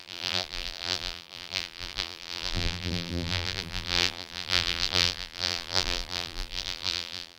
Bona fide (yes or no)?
no